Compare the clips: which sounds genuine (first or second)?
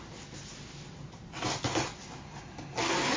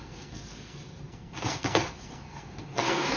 first